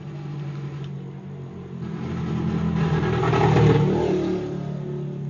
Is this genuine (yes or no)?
yes